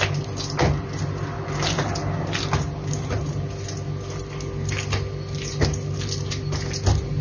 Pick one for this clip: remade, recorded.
recorded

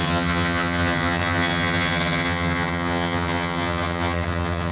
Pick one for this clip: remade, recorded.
remade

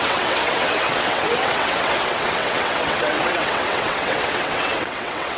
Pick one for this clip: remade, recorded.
remade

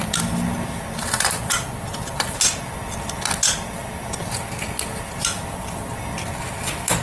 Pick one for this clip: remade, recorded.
recorded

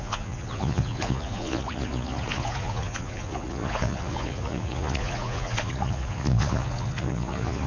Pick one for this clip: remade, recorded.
remade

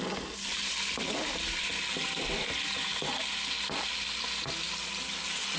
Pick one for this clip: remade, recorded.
recorded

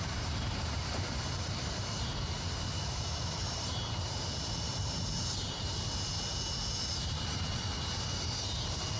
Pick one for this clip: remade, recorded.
remade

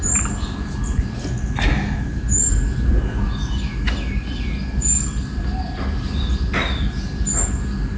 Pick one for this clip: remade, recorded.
recorded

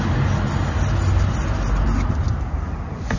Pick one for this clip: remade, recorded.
recorded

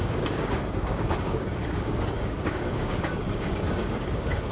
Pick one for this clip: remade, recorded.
remade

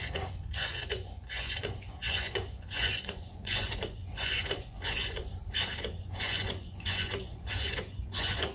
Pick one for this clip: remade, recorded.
remade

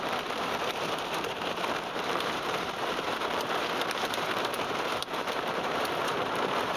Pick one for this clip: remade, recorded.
remade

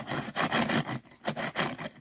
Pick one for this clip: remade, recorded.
recorded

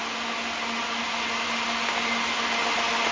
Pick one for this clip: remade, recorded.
recorded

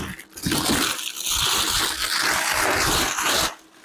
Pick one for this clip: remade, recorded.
recorded